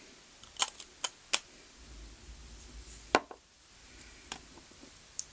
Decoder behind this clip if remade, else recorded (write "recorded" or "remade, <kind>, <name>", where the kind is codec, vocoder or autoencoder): recorded